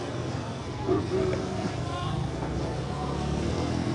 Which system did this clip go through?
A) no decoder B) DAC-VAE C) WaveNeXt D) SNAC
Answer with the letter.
D